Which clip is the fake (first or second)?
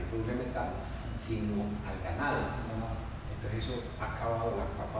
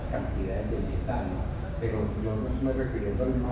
second